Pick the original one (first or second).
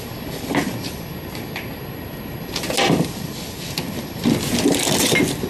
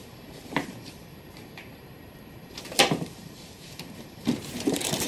first